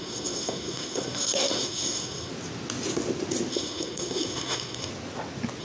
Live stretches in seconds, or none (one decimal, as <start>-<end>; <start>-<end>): 2.3-3.5; 4.9-5.6